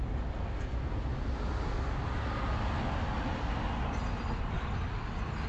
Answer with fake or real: real